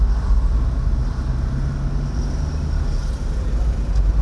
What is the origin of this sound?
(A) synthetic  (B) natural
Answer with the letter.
B